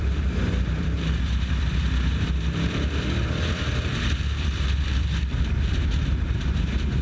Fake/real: fake